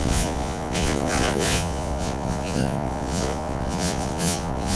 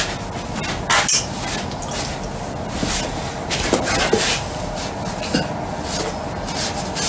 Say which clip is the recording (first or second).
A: second